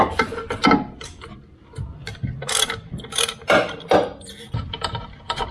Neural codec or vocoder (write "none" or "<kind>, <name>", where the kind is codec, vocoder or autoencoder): vocoder, BigVGAN v2